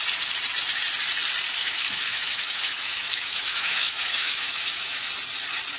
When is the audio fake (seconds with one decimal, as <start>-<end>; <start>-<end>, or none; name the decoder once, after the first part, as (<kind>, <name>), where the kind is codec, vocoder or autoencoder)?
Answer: 1.6-5.1 (autoencoder, DAC-VAE)